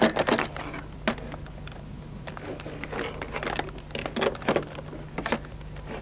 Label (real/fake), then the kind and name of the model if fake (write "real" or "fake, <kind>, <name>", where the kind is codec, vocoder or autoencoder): real